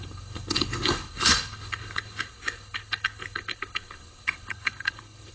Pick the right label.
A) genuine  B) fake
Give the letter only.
B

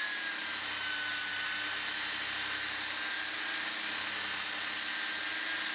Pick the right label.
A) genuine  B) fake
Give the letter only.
A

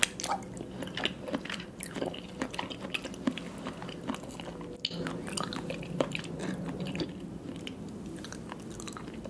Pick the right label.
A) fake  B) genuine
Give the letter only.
B